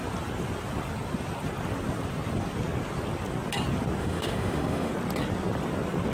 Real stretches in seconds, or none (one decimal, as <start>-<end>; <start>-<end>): 0.0-4.0; 4.9-6.1